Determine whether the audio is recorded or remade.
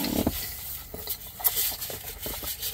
recorded